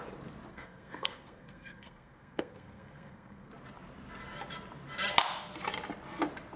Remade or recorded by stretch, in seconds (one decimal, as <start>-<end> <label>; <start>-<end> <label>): 0.0-0.5 recorded; 0.5-3.5 remade; 3.5-6.6 recorded

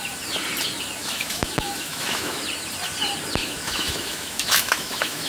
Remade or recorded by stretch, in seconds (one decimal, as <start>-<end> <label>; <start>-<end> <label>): 0.0-1.0 recorded; 1.0-2.4 remade; 2.4-3.4 recorded; 3.4-5.3 remade